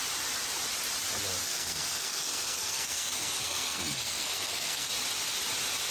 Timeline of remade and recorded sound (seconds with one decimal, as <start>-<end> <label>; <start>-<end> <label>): 0.0-1.4 recorded; 1.4-4.9 remade; 4.9-5.9 recorded